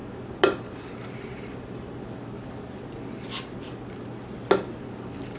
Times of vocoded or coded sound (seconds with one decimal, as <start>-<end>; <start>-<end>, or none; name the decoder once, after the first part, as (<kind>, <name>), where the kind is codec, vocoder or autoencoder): none